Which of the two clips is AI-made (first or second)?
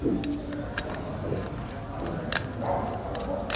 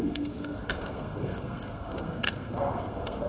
second